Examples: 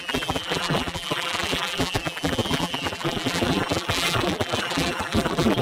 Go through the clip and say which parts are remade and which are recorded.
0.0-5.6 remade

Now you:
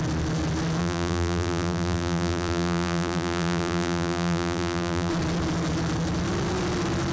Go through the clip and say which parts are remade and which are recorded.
0.0-0.8 recorded; 0.8-5.1 remade; 5.1-7.1 recorded

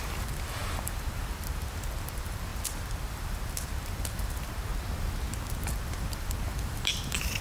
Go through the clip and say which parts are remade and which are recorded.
0.0-4.7 remade; 4.7-5.7 recorded; 5.7-7.4 remade

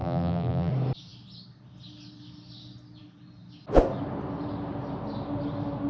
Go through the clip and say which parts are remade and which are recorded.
0.0-0.7 remade; 0.7-5.9 recorded

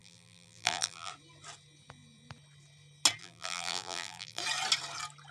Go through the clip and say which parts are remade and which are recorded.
0.0-1.1 remade; 1.1-3.2 recorded; 3.2-4.4 remade; 4.4-5.3 recorded

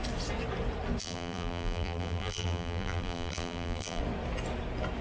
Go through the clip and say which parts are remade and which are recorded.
0.0-1.0 recorded; 1.0-4.0 remade; 4.0-5.0 recorded